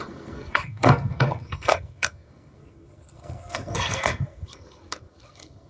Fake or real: fake